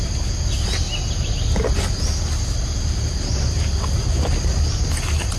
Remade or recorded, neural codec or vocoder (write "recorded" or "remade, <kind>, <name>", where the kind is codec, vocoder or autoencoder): recorded